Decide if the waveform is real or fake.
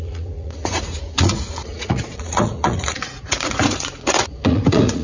fake